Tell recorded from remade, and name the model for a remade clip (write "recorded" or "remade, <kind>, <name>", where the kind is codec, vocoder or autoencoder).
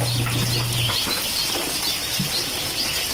recorded